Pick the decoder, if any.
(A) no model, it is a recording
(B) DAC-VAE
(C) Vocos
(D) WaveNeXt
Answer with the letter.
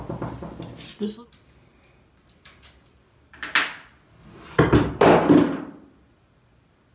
A